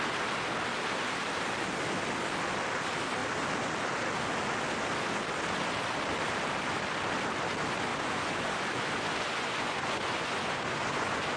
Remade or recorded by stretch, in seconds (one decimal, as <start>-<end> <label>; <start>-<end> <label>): 0.0-7.9 recorded; 7.9-11.4 remade